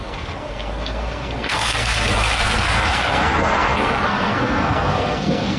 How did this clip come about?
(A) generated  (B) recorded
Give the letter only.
A